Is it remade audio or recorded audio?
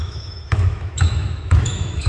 remade